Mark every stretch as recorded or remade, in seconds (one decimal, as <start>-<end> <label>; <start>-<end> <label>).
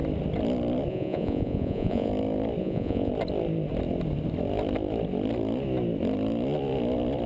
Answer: 0.0-0.9 recorded; 0.9-2.1 remade; 2.1-2.6 recorded; 2.6-3.1 remade; 3.1-7.3 recorded